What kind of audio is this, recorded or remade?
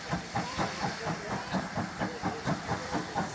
recorded